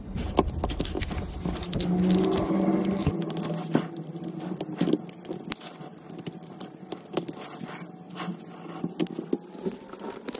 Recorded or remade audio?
recorded